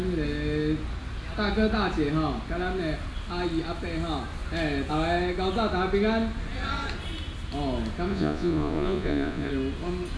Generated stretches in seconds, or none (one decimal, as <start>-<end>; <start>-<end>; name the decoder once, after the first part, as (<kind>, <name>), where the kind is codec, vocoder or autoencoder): 8.1-9.5 (vocoder, Vocos)